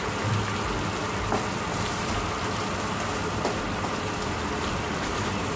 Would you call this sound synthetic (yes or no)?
no